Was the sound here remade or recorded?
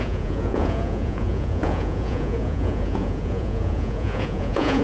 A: remade